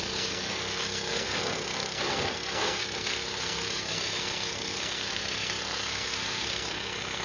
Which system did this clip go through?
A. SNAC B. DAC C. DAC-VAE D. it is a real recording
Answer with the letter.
A